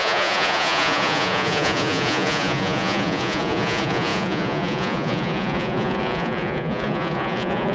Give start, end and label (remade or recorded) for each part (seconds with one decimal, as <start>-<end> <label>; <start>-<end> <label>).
0.0-7.7 remade